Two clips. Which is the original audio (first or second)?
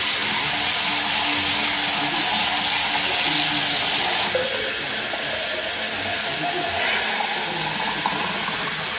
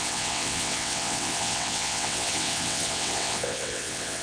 first